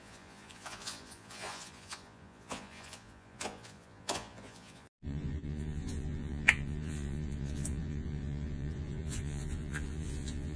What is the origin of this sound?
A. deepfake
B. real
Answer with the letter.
A